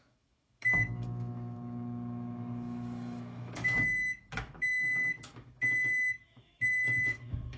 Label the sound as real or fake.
fake